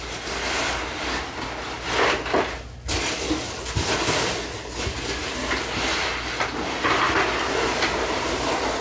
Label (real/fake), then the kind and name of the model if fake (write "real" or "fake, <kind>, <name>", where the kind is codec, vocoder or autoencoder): real